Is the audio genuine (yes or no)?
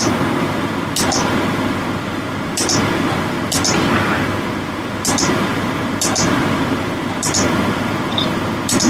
no